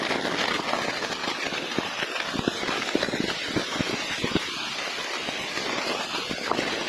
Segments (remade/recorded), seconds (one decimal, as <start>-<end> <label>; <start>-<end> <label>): 0.0-6.9 recorded